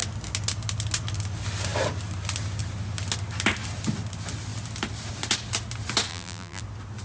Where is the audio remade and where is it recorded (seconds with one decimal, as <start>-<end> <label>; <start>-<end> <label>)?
0.0-6.1 recorded; 6.1-6.6 remade; 6.6-7.0 recorded